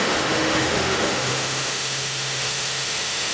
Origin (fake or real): fake